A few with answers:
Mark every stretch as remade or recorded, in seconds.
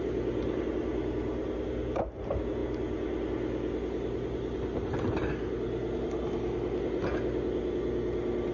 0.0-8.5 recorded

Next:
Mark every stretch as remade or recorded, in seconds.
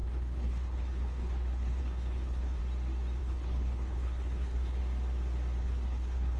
0.0-2.6 remade; 2.6-3.2 recorded; 3.2-4.8 remade; 4.8-5.6 recorded; 5.6-6.4 remade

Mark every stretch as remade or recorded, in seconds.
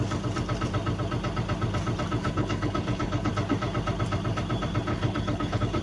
0.0-2.2 recorded; 2.2-3.3 remade; 3.3-4.9 recorded; 4.9-5.8 remade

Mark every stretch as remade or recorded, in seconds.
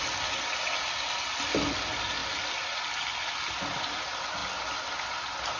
0.0-5.6 recorded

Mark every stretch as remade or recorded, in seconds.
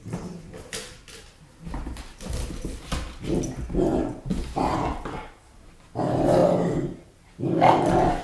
0.0-8.2 recorded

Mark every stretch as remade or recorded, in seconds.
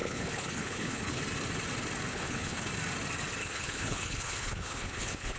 0.0-1.2 remade; 1.2-2.1 recorded; 2.1-2.7 remade; 2.7-3.4 recorded; 3.4-5.4 remade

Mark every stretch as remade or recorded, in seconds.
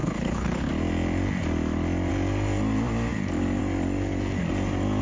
0.0-0.7 remade; 0.7-5.0 recorded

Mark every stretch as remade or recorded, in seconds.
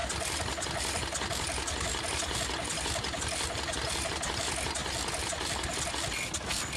0.0-6.8 recorded